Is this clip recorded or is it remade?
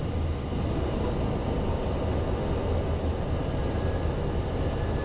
recorded